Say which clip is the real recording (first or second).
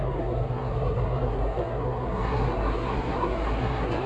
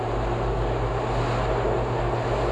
second